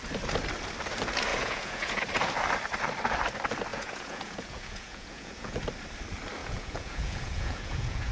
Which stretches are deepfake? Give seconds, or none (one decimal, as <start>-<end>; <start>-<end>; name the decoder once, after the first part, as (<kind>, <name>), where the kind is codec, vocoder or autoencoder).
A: 1.3-2.0 (vocoder, Vocos); 3.7-5.6; 6.4-8.1